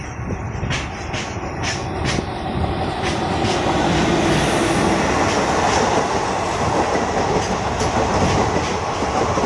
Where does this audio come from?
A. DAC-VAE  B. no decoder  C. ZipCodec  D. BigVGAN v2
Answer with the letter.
B